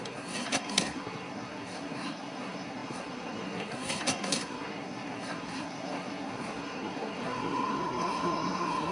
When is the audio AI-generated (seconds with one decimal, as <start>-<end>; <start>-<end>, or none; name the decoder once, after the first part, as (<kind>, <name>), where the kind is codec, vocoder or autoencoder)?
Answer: 0.0-8.9 (codec, SNAC)